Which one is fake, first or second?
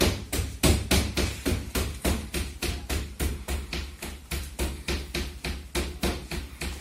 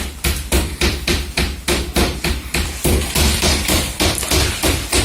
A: second